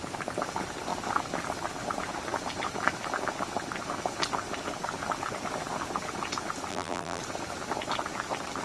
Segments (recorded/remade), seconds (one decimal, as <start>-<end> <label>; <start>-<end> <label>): 0.0-6.7 recorded; 6.7-7.2 remade; 7.2-8.6 recorded